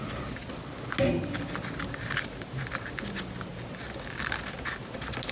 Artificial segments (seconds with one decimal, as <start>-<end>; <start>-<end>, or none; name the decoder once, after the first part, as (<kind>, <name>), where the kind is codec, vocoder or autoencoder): none